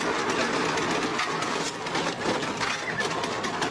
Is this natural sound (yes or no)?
yes